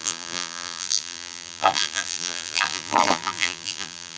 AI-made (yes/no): yes